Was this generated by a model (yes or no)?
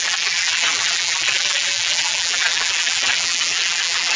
yes